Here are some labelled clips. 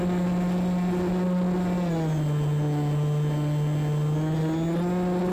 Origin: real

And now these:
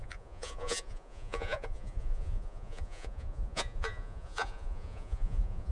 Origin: fake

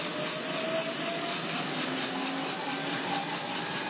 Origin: real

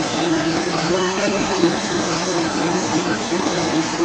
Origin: fake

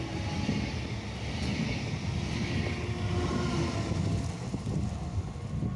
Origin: real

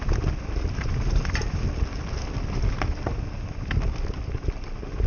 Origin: real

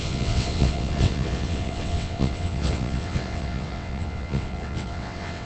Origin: fake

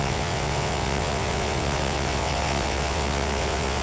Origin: fake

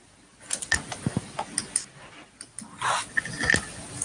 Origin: real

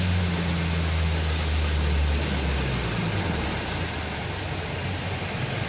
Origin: real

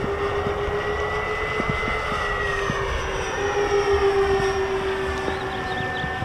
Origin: real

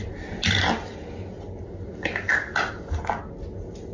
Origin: real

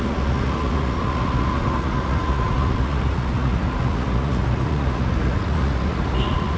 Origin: fake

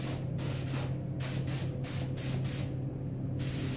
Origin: real